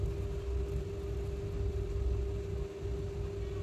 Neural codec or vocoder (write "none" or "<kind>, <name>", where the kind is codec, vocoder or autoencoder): none